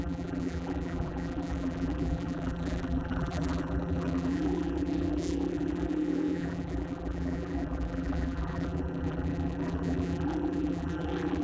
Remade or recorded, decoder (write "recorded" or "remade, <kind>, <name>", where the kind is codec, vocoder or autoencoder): remade, vocoder, BigVGAN v2